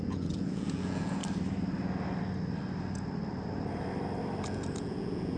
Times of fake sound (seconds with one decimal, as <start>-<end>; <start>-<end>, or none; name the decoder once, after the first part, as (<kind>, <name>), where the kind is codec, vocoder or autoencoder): 0.0-1.2 (vocoder, Vocos); 4.4-5.4